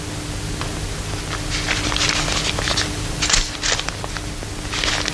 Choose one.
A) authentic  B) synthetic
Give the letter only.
A